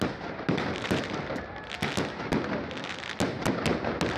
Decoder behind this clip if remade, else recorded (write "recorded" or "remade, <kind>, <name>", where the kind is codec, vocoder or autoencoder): recorded